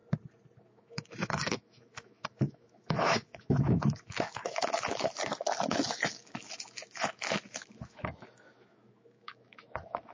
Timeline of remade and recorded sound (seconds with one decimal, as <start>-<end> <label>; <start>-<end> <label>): 0.0-0.6 recorded; 0.6-10.1 remade